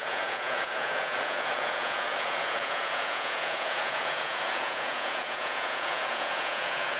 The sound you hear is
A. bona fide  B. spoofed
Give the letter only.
B